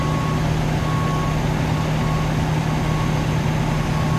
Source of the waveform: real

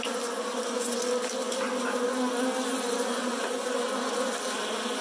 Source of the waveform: real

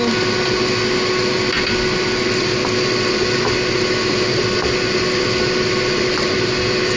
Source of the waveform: real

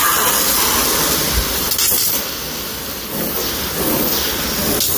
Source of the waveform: real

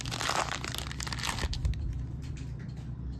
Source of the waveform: real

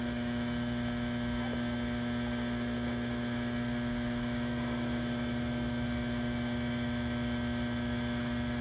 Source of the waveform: fake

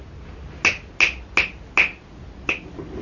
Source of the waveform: real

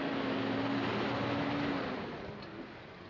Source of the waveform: real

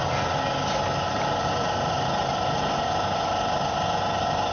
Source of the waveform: real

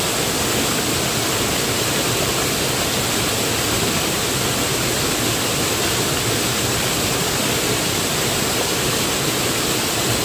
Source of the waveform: real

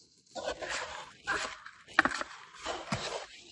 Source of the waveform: real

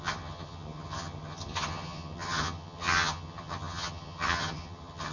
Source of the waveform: fake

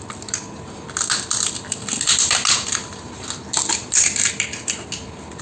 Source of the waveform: real